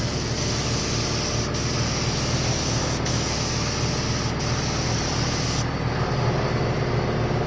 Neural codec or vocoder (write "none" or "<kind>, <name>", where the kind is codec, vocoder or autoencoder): none